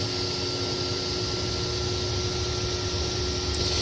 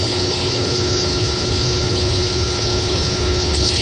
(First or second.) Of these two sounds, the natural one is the first